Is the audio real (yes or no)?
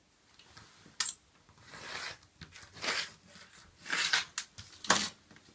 yes